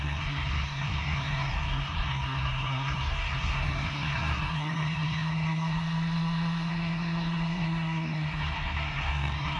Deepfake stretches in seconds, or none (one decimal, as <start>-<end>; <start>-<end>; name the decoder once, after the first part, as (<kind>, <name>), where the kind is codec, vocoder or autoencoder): 0.0-9.6 (codec, SNAC)